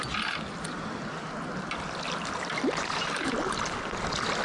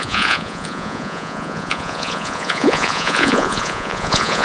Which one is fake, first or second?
second